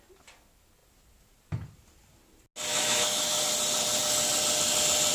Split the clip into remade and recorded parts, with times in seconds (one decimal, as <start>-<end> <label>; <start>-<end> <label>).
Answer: 0.0-2.7 recorded; 2.7-3.4 remade; 3.4-5.1 recorded

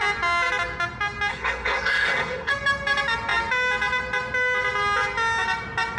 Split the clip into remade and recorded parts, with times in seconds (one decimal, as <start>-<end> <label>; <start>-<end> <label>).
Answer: 0.0-1.3 recorded; 1.3-2.5 remade; 2.5-6.0 recorded

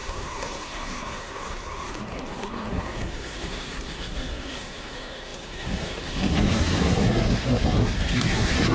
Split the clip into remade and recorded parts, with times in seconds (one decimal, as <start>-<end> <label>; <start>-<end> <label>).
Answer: 0.0-8.7 remade

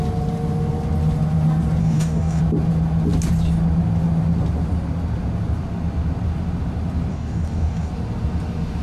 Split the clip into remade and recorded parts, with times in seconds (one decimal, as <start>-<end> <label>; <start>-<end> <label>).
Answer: 0.0-1.8 recorded; 1.8-2.4 remade; 2.4-7.1 recorded; 7.1-7.9 remade; 7.9-8.8 recorded

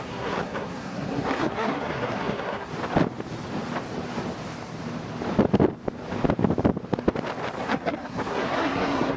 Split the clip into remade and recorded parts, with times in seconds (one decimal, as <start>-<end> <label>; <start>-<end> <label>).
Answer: 0.0-2.7 remade; 2.7-7.6 recorded; 7.6-9.2 remade

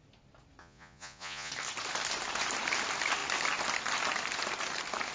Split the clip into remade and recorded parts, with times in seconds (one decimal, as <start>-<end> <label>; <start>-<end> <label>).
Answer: 0.0-0.6 recorded; 0.6-1.5 remade; 1.5-5.1 recorded

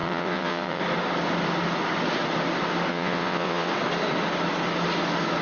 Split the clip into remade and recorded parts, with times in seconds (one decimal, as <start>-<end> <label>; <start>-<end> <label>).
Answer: 0.0-0.8 remade; 0.8-2.9 recorded; 2.9-3.7 remade; 3.7-5.4 recorded